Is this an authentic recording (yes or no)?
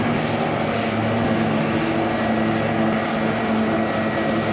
yes